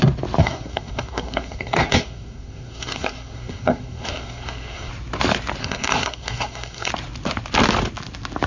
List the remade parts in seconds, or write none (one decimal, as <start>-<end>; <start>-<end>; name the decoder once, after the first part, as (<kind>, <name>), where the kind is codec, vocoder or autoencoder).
0.4-4.9 (codec, SNAC); 5.6-6.9